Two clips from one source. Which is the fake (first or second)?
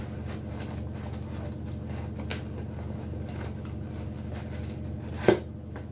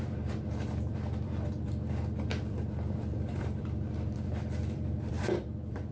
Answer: second